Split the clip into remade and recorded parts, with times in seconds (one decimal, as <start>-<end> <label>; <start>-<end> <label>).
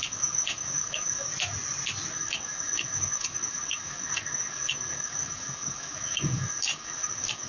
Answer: 0.0-1.3 remade; 1.3-2.1 recorded; 2.1-7.5 remade